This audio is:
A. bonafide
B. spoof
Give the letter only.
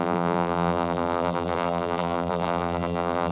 B